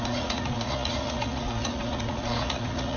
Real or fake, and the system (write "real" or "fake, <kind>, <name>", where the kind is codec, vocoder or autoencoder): fake, vocoder, Vocos